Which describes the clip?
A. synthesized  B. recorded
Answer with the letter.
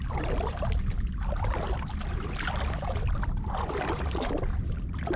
B